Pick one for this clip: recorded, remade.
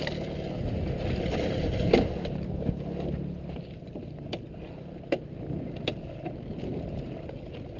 recorded